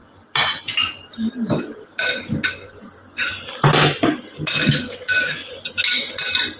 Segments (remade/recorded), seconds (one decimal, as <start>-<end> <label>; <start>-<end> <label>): 0.0-0.7 remade; 0.7-6.6 recorded